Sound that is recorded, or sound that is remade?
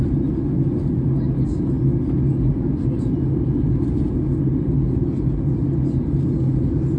recorded